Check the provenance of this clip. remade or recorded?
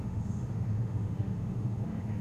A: remade